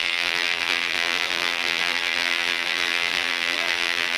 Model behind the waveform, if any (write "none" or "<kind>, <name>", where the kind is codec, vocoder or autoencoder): vocoder, BigVGAN v2